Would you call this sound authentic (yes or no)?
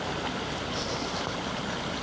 yes